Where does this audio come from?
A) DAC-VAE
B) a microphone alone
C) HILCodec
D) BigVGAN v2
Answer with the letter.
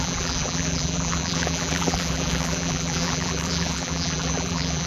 D